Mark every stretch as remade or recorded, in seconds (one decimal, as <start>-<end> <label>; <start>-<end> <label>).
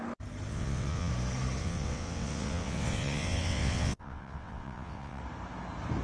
0.0-0.5 recorded; 0.5-1.1 remade; 1.1-1.6 recorded; 1.6-5.2 remade; 5.2-6.0 recorded